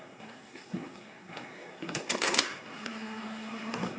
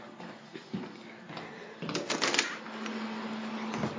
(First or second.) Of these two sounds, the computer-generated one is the first